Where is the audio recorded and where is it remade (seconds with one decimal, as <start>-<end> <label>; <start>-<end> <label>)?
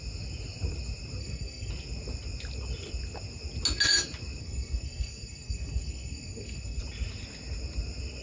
0.0-1.2 recorded; 1.2-1.7 remade; 1.7-4.4 recorded; 4.4-6.8 remade; 6.8-8.2 recorded